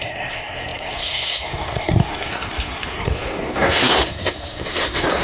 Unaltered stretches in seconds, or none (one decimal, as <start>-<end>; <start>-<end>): none